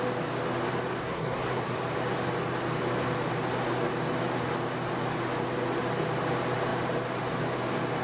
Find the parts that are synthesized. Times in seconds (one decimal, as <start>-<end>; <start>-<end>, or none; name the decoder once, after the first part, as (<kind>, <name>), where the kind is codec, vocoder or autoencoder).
1.0-1.8 (codec, SNAC)

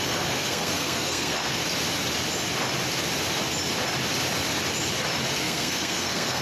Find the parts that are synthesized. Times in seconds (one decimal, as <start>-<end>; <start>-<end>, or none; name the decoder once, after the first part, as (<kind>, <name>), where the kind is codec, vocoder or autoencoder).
0.0-1.6 (codec, SNAC); 5.4-6.4

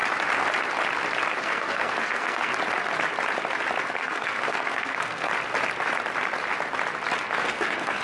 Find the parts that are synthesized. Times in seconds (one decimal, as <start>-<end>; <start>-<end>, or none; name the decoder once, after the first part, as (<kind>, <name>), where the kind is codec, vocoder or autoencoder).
1.4-2.5 (codec, SNAC); 3.8-5.3; 7.4-8.0

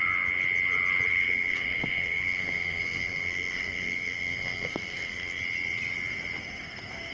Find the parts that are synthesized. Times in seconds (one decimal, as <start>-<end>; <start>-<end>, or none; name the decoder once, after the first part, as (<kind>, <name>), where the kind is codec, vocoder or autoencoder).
1.1-5.4 (codec, SNAC)

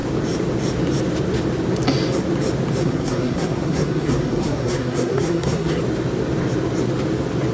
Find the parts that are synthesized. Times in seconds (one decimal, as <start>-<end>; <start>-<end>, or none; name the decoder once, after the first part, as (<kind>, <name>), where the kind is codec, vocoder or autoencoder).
2.8-5.8 (codec, SNAC)

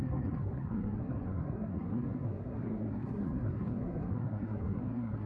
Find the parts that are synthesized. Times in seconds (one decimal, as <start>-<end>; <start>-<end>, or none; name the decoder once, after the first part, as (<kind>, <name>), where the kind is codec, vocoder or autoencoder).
0.0-5.3 (codec, SNAC)

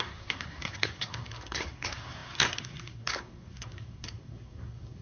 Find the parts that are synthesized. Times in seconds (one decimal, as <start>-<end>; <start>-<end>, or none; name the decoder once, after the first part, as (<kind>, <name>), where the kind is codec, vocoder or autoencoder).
0.0-5.0 (codec, SNAC)

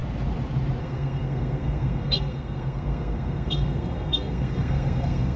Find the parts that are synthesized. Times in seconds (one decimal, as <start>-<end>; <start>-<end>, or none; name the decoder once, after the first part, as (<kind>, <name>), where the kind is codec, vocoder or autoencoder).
0.8-5.4 (codec, SNAC)